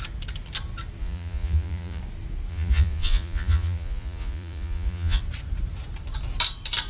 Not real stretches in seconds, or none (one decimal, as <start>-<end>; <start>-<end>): 1.0-2.0; 2.5-5.2

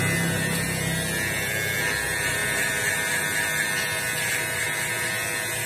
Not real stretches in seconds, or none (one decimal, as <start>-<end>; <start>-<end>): none

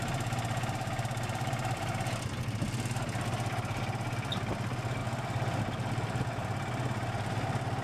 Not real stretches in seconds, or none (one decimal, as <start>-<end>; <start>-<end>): none

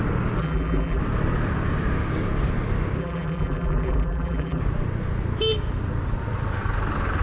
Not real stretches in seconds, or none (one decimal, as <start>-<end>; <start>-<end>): 0.4-1.0; 3.0-4.6

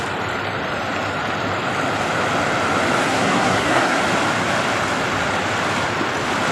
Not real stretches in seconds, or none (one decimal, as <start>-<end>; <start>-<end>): 3.0-4.0

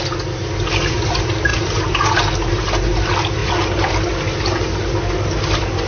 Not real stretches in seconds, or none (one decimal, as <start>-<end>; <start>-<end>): none